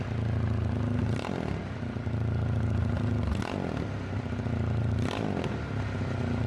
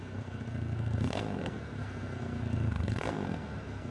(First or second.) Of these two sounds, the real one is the first